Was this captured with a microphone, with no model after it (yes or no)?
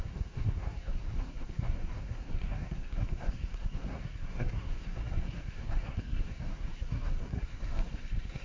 no